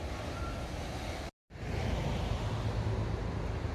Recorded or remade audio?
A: recorded